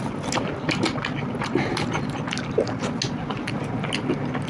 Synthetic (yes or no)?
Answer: no